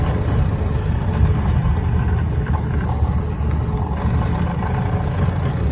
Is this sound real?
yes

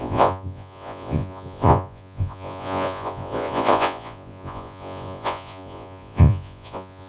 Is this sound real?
no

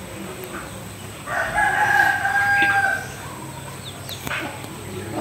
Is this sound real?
yes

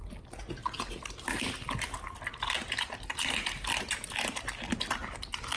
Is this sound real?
yes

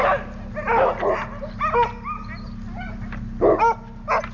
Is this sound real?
yes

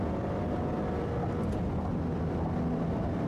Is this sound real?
yes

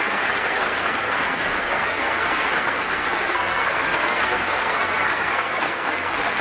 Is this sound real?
no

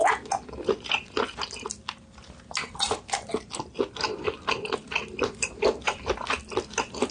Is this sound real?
yes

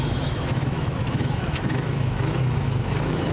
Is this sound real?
no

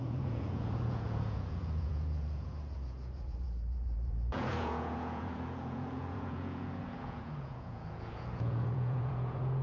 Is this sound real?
no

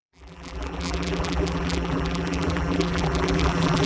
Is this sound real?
no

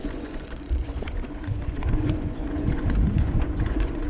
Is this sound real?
no